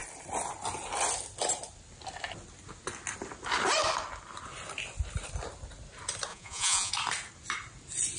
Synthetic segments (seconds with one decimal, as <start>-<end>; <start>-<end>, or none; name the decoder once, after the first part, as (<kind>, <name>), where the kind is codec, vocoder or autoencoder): 6.3-6.9 (vocoder, Vocos)